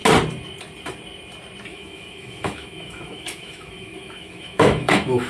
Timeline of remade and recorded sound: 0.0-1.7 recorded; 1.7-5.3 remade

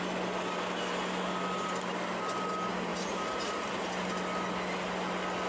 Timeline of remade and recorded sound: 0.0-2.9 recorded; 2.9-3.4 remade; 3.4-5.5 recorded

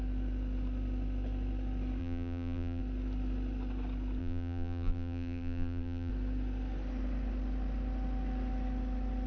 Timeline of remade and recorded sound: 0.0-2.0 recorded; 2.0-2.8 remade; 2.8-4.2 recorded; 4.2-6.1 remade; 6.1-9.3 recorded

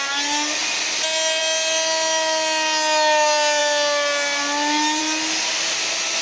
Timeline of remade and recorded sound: 0.0-6.2 recorded

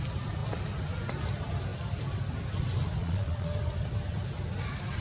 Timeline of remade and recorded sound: 0.0-3.0 recorded; 3.0-3.5 remade; 3.5-5.0 recorded

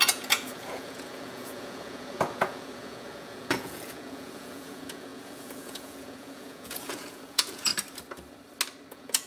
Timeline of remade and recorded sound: 0.0-7.7 remade; 7.7-8.9 recorded; 8.9-9.3 remade